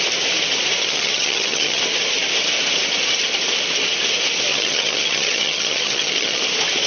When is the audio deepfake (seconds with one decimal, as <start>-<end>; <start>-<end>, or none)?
0.8-1.8; 4.5-6.4